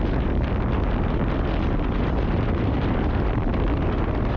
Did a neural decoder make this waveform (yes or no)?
no